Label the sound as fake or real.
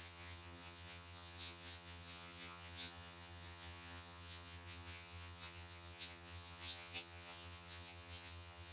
fake